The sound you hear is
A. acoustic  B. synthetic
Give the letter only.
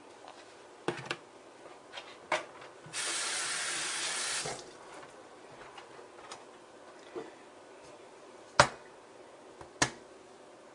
A